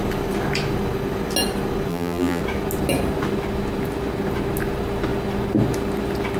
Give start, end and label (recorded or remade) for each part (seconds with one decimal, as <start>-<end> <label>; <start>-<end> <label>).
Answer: 0.0-1.9 recorded; 1.9-2.4 remade; 2.4-6.4 recorded